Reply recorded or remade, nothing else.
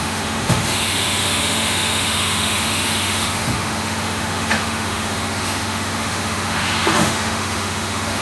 remade